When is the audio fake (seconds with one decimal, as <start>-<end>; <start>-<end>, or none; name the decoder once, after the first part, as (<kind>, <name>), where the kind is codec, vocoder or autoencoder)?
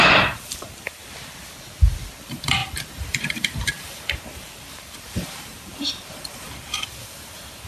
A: 0.0-1.0 (vocoder, BigVGAN v2); 2.2-7.7